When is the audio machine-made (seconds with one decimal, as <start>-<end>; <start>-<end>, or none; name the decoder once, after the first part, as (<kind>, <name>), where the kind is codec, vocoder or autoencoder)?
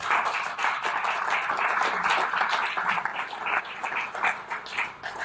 none